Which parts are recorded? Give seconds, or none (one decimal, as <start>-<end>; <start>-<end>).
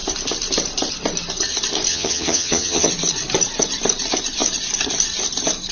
0.0-1.9; 2.9-5.7